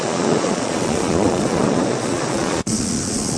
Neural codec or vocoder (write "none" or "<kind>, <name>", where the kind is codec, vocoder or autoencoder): vocoder, Vocos